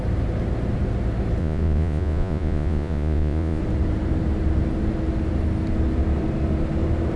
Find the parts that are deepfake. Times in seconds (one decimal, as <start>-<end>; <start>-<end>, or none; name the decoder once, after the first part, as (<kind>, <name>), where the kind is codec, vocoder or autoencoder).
1.4-3.6 (vocoder, Vocos)